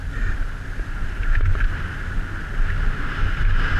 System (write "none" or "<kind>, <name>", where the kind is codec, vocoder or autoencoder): none